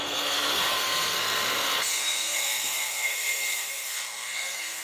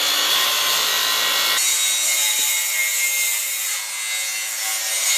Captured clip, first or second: second